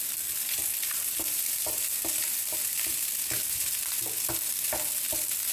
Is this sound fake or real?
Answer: real